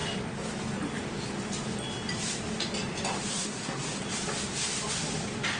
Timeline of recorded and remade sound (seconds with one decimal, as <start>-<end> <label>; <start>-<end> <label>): 0.0-3.3 recorded; 3.3-4.0 remade; 4.0-5.6 recorded